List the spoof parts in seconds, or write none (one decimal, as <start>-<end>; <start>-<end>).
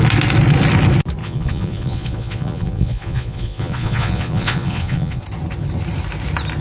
1.2-5.2